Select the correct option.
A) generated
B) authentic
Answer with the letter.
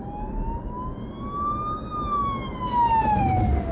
B